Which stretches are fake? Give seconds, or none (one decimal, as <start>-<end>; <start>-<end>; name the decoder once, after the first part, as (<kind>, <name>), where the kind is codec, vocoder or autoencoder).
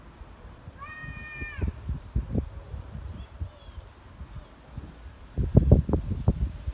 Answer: none